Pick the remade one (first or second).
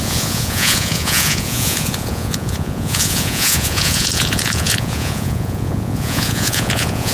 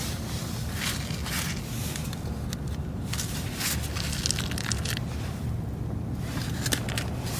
first